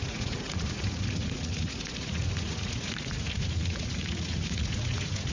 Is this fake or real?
fake